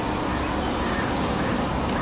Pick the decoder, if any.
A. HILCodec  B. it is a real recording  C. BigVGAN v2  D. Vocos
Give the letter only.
B